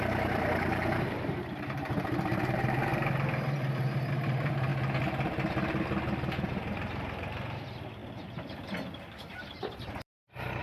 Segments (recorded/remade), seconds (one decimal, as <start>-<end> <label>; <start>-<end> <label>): 0.0-4.7 remade; 4.7-6.5 recorded; 6.5-10.6 remade